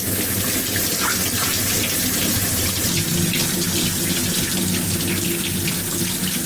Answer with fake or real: real